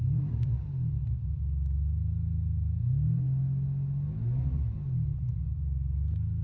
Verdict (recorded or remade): recorded